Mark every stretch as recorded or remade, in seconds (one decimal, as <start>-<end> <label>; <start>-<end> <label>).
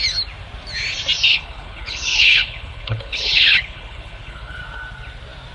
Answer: 0.0-1.3 recorded; 1.3-4.6 remade; 4.6-5.5 recorded